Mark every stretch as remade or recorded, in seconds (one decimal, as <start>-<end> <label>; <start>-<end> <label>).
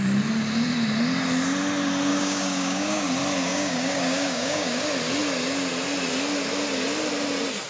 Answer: 0.0-2.1 recorded; 2.1-3.1 remade; 3.1-3.5 recorded; 3.5-4.8 remade; 4.8-7.7 recorded